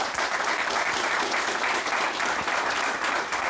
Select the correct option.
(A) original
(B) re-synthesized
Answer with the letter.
B